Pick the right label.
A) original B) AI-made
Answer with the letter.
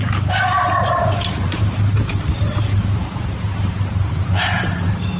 B